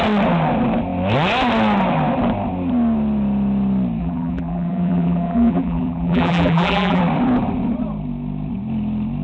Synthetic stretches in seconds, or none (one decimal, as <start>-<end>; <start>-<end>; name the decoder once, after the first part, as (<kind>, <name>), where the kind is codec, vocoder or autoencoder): 4.0-7.0 (vocoder, BigVGAN v2)